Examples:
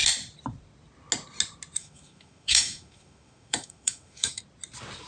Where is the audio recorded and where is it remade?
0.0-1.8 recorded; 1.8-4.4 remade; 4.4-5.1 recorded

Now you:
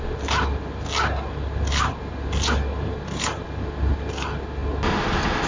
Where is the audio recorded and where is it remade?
0.0-5.5 recorded

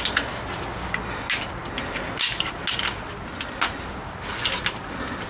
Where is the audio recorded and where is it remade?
0.0-5.3 recorded